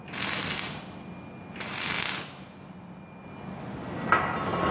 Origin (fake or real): real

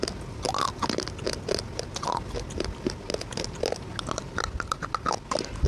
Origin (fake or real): real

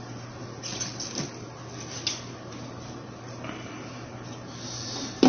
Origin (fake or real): real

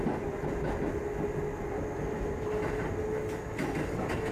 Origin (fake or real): real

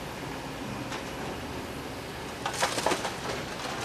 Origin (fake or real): real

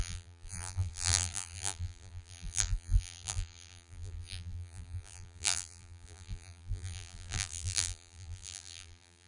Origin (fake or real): fake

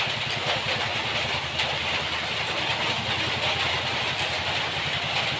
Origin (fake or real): real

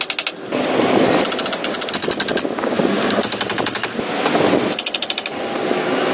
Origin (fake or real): real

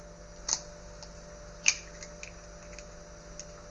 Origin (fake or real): real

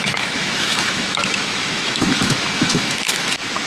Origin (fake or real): fake